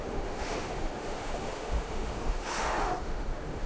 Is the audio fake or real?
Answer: fake